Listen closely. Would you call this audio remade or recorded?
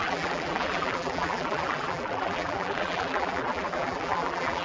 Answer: remade